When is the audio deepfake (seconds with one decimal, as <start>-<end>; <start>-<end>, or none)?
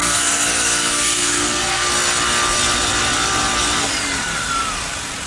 0.0-1.9